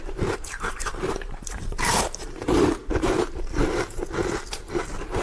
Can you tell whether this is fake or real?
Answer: fake